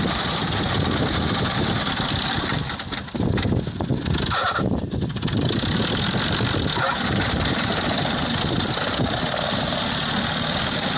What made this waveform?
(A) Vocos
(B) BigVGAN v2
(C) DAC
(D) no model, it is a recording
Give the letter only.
D